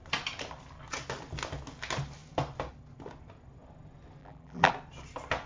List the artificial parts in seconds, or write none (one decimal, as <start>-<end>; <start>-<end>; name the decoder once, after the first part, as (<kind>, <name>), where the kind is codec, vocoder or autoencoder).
4.2-4.7 (vocoder, BigVGAN v2)